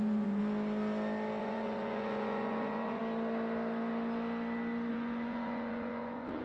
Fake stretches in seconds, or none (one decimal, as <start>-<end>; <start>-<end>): 0.0-0.4; 1.4-3.0; 4.9-6.4